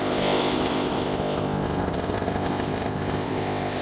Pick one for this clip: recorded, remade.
remade